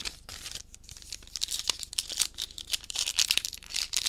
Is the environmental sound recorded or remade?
remade